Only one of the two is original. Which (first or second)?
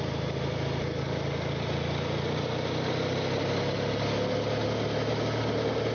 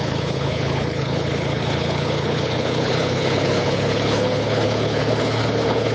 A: first